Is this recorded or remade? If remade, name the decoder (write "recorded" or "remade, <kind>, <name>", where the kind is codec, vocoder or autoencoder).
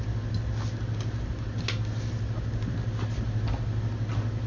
recorded